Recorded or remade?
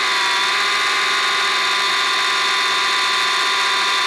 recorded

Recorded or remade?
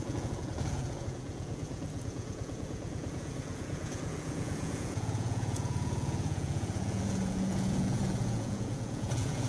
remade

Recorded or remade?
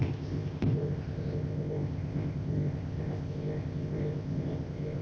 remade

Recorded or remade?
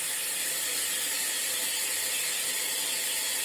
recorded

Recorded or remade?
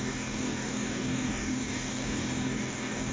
remade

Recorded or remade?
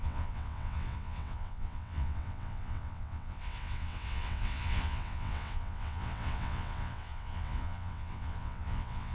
remade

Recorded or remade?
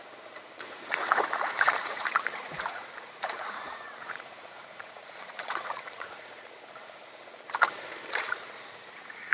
remade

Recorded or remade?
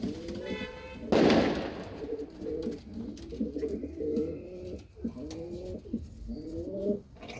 recorded